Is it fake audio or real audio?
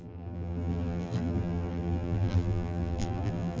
fake